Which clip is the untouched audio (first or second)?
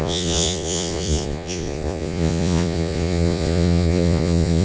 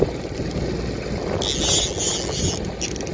second